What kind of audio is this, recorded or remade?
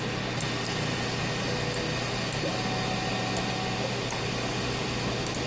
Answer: recorded